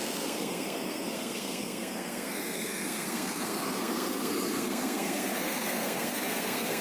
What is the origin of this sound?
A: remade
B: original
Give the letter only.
A